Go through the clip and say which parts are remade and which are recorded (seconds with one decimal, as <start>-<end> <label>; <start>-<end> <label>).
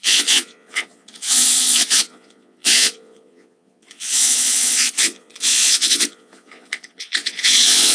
0.0-7.9 remade